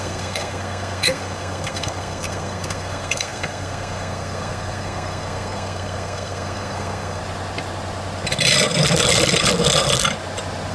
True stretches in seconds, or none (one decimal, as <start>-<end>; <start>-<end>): 7.2-10.7